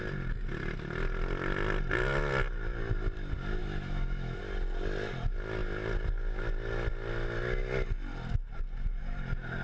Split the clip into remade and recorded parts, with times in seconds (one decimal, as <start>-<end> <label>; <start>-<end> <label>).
0.0-3.6 recorded; 3.6-4.4 remade; 4.4-9.6 recorded